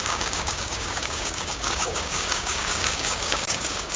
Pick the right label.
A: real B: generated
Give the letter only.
B